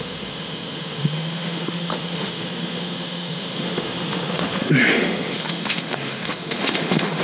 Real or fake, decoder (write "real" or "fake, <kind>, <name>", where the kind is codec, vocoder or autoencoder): fake, autoencoder, DAC-VAE